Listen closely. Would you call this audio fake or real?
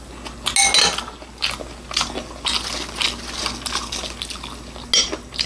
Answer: real